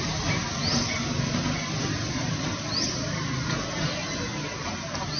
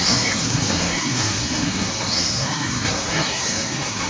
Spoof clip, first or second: second